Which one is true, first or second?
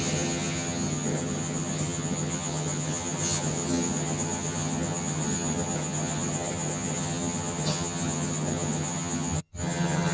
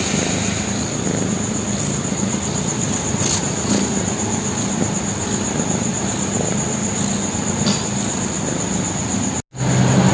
second